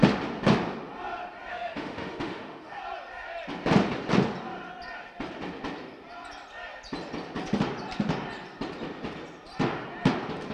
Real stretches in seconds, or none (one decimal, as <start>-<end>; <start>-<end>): 0.0-1.5; 2.8-10.5